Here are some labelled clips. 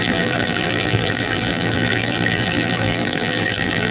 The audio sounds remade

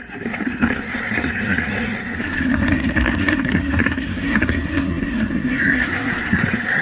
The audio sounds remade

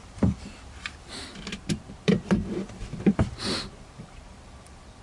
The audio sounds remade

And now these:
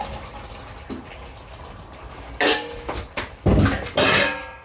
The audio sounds recorded